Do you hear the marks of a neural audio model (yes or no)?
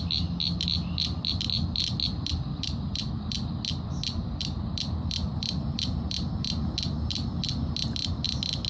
no